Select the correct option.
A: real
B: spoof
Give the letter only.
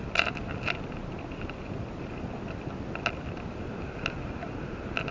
A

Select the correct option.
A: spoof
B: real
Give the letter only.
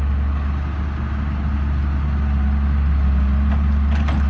B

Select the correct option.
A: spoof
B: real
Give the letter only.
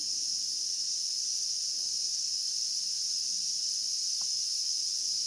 B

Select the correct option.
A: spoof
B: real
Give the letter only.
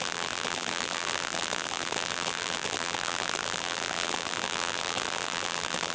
A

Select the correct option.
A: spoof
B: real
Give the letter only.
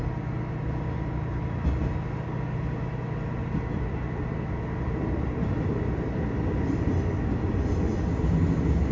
B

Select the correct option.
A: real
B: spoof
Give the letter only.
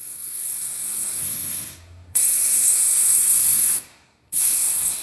B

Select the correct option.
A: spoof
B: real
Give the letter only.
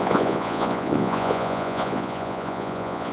A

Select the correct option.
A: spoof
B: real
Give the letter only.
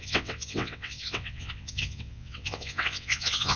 A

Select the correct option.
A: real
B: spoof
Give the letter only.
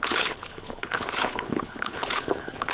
B